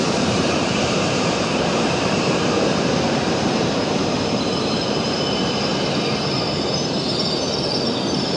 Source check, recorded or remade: remade